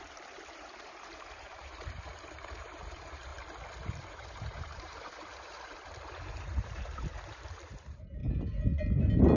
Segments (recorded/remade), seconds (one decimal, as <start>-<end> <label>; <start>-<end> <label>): 0.0-3.3 remade; 3.3-4.1 recorded; 4.1-8.2 remade; 8.2-9.4 recorded